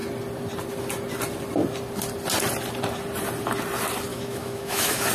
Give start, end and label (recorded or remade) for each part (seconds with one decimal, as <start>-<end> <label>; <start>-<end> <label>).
0.0-4.1 recorded; 4.1-5.1 remade